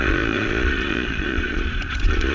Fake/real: fake